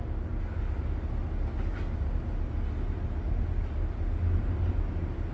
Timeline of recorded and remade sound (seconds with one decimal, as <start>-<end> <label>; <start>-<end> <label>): 0.0-5.3 recorded